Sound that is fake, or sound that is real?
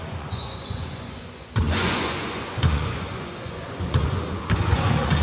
fake